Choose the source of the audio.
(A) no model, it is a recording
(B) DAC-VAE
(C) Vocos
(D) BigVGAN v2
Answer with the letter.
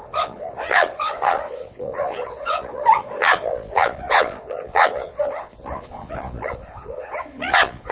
C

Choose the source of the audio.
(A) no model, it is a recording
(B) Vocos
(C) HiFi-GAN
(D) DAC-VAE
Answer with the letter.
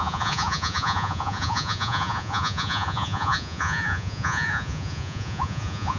B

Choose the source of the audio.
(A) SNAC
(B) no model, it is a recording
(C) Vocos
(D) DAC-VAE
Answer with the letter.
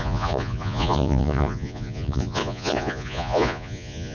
C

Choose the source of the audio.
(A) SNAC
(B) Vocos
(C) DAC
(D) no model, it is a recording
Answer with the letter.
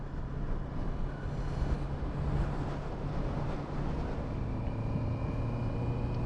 D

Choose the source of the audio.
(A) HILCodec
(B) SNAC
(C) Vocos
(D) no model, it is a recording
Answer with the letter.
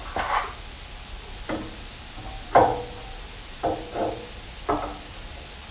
D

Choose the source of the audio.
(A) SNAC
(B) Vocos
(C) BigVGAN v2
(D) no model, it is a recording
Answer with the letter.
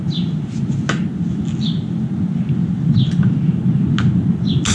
D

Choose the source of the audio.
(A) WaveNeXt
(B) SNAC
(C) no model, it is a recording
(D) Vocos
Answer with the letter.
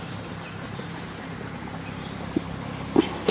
C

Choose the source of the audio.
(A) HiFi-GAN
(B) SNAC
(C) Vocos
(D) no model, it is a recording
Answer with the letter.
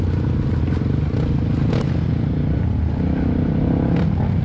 D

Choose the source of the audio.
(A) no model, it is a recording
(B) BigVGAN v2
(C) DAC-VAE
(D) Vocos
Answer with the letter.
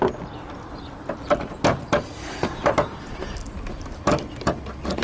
A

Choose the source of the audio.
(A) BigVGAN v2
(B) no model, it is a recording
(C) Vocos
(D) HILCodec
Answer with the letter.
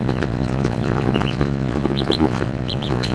C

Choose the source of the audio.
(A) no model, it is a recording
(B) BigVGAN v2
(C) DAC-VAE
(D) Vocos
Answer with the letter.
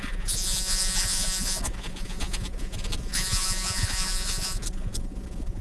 D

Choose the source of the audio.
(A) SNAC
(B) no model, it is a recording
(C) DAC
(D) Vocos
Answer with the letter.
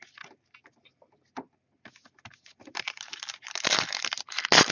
B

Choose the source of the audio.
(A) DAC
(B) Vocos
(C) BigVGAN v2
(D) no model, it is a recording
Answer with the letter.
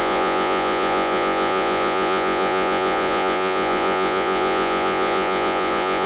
B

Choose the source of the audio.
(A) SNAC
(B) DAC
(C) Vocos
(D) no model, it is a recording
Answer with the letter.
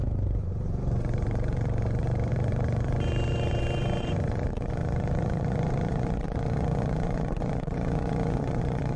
C